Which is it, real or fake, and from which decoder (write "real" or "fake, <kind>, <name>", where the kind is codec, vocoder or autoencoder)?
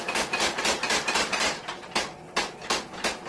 fake, vocoder, BigVGAN v2